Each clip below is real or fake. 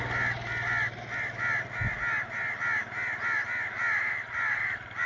real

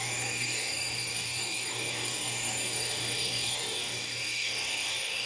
fake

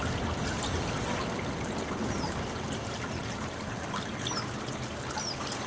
real